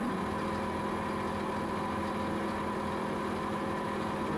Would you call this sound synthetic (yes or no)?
no